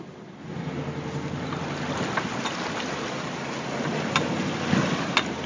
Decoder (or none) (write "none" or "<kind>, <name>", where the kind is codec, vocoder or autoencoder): none